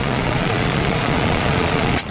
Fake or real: fake